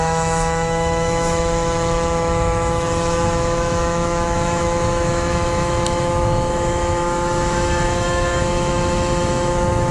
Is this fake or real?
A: fake